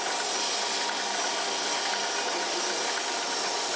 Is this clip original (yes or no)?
yes